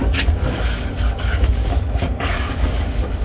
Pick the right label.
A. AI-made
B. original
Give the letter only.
A